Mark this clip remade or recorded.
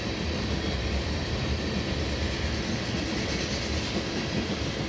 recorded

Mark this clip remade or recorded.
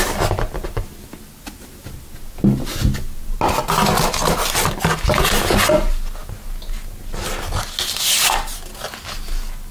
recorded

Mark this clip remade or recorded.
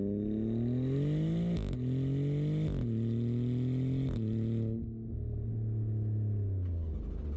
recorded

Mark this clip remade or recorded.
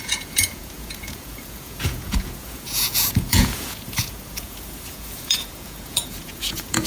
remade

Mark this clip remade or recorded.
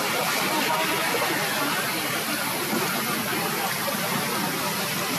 recorded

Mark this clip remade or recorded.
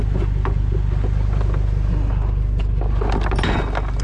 recorded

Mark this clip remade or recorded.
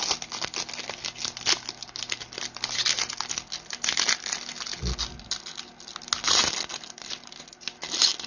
recorded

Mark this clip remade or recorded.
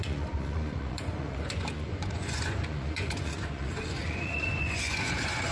remade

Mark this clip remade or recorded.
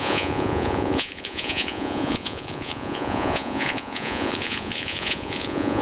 remade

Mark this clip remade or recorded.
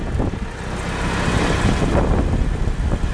recorded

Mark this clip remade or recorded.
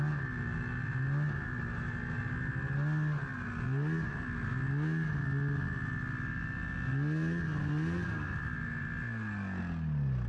recorded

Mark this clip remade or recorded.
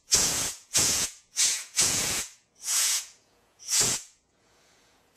remade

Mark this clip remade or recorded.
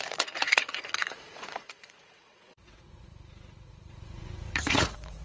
remade